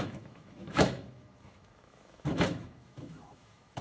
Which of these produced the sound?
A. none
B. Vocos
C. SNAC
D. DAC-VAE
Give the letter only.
D